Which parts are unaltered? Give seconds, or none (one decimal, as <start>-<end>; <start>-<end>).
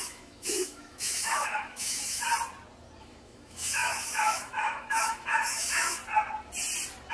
2.3-3.0; 6.0-7.1